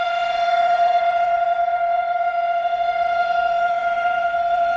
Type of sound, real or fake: fake